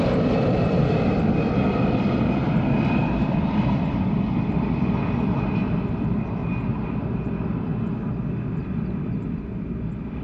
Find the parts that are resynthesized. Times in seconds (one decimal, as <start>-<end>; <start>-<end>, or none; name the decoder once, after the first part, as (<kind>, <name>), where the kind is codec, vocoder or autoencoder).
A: 0.0-6.4 (vocoder, BigVGAN v2); 7.3-7.7; 8.7-10.2